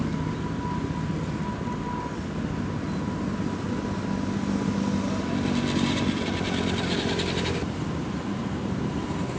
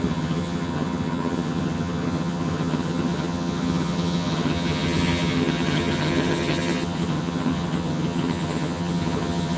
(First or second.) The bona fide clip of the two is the first